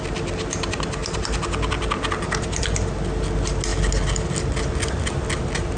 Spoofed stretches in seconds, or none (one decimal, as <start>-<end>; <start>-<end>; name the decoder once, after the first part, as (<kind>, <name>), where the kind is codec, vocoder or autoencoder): 1.0-2.9 (vocoder, BigVGAN v2)